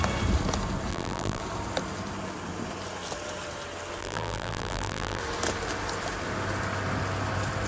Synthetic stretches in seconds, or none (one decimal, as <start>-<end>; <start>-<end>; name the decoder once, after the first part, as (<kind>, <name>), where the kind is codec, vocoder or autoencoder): 0.9-1.4 (vocoder, BigVGAN v2); 4.0-5.2